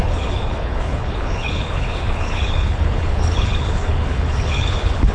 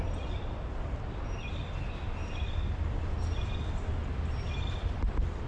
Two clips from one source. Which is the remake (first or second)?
first